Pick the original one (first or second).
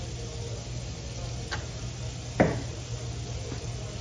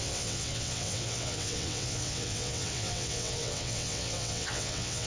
first